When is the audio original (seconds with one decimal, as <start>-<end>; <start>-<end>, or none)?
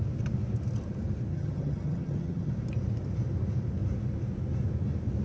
0.0-1.3; 2.5-5.2